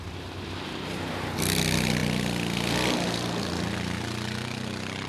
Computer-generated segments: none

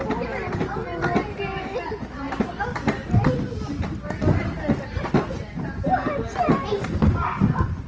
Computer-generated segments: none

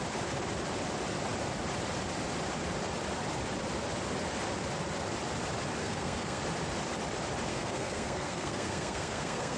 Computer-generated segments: 5.8-6.4 (codec, SNAC); 7.5-9.6

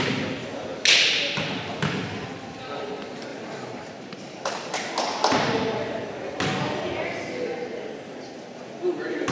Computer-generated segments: 3.3-4.8 (vocoder, BigVGAN v2)

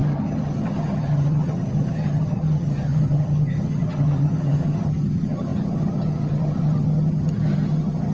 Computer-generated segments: 0.0-8.1 (vocoder, HiFi-GAN)

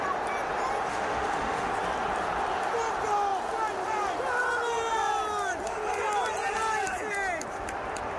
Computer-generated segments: 0.9-1.7 (autoencoder, DAC-VAE)

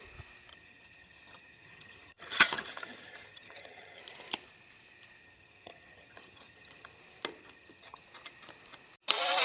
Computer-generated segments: 0.5-4.0 (vocoder, HiFi-GAN); 5.2-7.0; 7.4-8.0

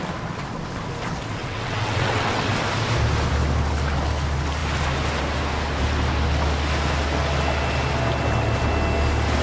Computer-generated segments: 1.4-2.5 (vocoder, WaveNeXt)